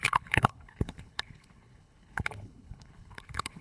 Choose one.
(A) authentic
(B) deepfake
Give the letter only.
B